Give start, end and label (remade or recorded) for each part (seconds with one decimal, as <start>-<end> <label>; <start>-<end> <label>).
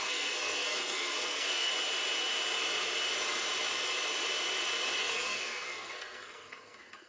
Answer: 0.0-1.7 remade; 1.7-5.0 recorded; 5.0-7.1 remade